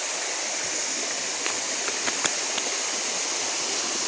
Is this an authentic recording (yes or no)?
yes